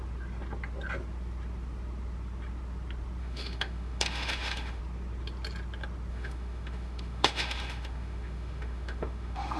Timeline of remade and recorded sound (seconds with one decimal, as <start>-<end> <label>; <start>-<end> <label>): 0.0-3.2 recorded; 3.2-4.8 remade; 4.8-6.1 recorded; 6.1-9.6 remade